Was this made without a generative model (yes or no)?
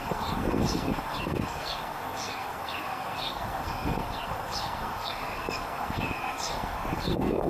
no